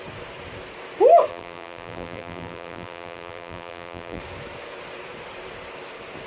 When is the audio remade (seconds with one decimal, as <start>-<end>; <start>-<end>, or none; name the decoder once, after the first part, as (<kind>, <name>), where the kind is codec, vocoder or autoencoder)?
1.3-4.2 (vocoder, BigVGAN v2)